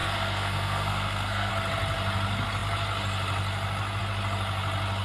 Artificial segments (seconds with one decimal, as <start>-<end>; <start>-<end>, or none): 0.0-1.5